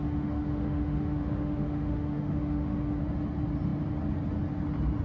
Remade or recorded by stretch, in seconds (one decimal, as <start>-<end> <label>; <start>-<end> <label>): 0.0-3.0 remade; 3.0-5.0 recorded